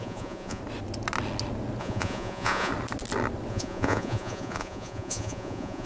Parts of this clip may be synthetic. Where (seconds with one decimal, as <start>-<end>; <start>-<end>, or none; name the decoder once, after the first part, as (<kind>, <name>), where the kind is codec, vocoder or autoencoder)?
0.0-0.6 (vocoder, Vocos); 1.8-2.7; 3.5-5.9